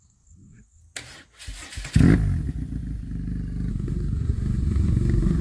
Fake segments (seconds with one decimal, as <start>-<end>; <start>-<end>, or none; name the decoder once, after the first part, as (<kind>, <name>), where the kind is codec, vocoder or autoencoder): 0.0-0.8 (codec, SNAC); 3.7-5.4